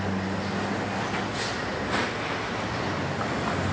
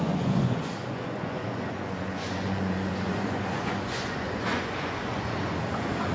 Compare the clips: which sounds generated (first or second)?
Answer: second